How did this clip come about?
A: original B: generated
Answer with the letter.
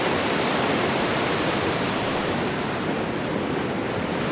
A